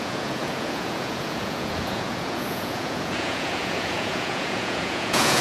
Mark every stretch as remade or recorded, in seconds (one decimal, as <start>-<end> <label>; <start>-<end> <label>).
0.0-5.4 remade